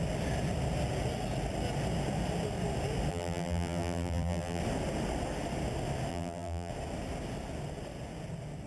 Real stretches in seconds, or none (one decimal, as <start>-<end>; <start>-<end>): 0.0-3.1; 4.6-6.1; 6.7-8.7